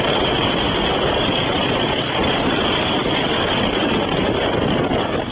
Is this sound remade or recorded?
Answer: remade